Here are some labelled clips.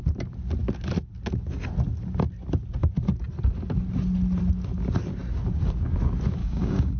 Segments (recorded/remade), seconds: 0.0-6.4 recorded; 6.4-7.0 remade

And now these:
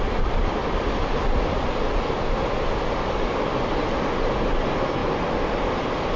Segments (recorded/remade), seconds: 0.0-6.2 recorded

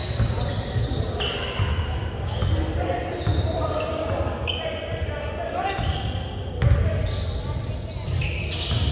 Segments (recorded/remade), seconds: 0.0-1.7 recorded; 1.7-2.4 remade; 2.4-8.9 recorded

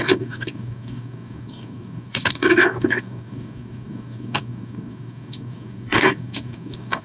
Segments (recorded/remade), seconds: 0.0-7.0 remade